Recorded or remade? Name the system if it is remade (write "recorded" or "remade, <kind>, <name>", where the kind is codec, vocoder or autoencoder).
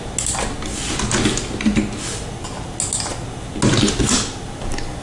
recorded